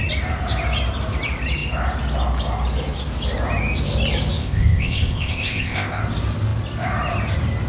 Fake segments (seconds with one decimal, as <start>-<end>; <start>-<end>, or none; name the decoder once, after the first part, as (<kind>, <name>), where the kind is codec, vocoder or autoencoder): 4.4-6.0 (codec, ZipCodec)